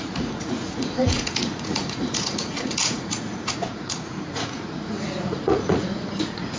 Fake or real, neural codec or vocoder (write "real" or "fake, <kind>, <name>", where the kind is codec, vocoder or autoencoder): fake, vocoder, Vocos